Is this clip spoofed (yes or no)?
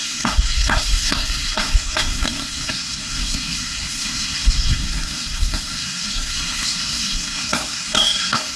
yes